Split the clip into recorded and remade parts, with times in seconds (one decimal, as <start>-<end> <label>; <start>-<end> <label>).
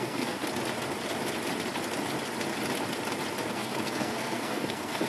0.0-0.4 remade; 0.4-3.5 recorded; 3.5-5.1 remade